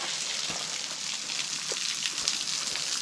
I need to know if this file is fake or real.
real